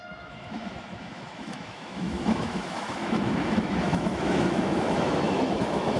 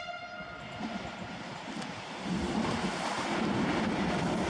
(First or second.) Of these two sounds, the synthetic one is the first